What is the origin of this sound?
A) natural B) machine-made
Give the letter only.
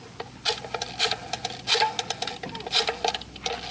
A